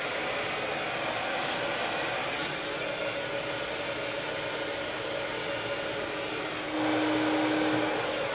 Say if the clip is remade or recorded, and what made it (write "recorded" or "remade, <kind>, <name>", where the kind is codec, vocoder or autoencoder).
recorded